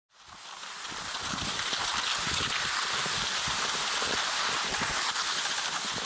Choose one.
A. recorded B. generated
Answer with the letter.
A